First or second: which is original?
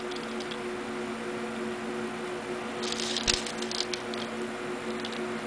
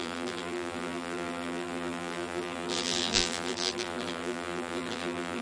first